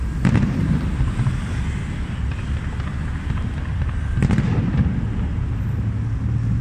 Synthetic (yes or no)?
no